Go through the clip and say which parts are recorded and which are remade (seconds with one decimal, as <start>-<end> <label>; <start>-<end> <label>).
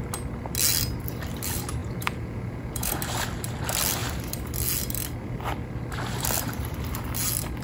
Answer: 0.0-1.8 recorded; 1.8-3.0 remade; 3.0-7.6 recorded